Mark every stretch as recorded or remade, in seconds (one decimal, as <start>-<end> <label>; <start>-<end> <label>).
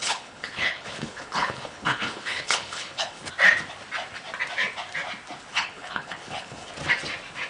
0.0-3.3 remade; 3.3-5.5 recorded; 5.5-6.7 remade; 6.7-7.5 recorded